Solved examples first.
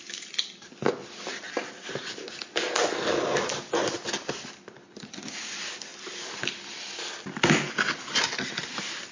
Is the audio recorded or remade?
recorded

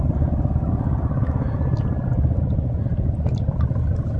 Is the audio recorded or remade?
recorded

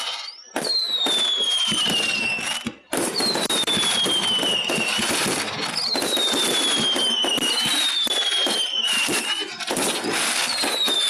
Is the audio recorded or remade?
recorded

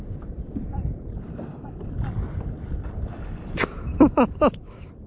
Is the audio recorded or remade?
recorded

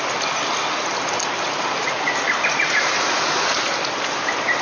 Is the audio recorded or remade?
recorded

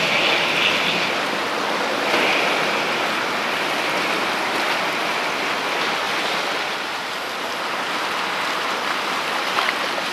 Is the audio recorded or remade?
recorded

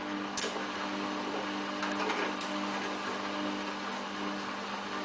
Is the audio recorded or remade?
recorded